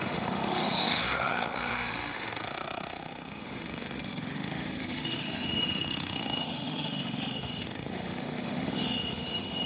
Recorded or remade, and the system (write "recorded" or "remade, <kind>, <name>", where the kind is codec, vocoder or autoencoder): remade, autoencoder, DAC-VAE